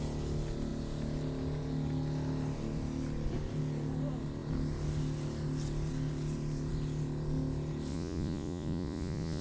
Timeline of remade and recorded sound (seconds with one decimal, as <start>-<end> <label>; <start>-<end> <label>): 0.0-7.9 recorded; 7.9-9.4 remade